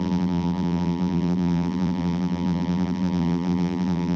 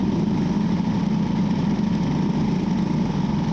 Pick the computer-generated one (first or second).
first